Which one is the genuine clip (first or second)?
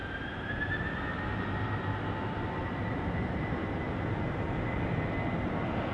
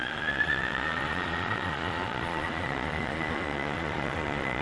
first